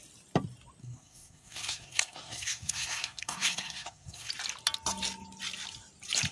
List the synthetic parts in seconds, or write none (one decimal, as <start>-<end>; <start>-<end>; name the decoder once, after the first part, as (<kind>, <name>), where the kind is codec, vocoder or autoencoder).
0.8-4.3 (codec, SNAC)